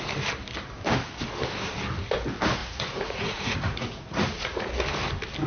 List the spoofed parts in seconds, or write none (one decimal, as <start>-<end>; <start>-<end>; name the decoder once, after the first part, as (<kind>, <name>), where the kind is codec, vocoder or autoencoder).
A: 2.6-4.7 (vocoder, Vocos)